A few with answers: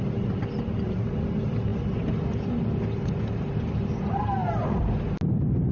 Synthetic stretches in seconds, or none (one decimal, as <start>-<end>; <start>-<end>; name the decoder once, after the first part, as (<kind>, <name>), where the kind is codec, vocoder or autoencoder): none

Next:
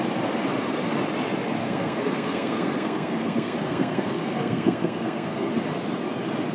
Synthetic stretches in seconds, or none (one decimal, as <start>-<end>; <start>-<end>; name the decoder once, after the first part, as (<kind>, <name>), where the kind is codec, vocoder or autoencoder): 1.6-5.5 (codec, SNAC)

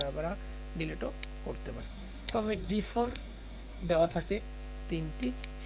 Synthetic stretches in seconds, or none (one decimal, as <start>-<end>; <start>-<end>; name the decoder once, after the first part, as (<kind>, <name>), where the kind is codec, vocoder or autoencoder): 1.8-4.4 (codec, SNAC)